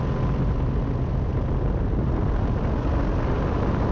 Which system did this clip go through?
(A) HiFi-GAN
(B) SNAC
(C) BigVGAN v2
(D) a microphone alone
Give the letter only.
D